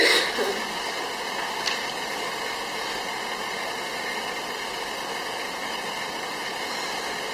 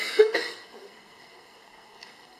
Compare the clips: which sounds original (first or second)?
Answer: first